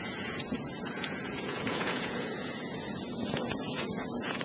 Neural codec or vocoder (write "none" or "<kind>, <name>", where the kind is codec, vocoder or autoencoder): vocoder, Vocos